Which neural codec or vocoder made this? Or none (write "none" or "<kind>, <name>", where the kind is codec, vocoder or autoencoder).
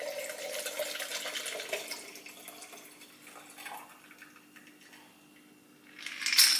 none